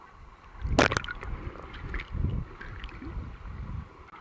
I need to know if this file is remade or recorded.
recorded